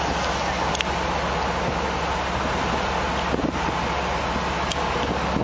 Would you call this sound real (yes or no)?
yes